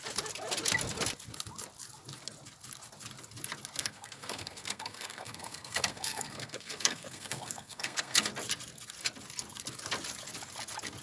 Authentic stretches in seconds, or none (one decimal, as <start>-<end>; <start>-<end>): 0.0-3.8; 8.3-11.0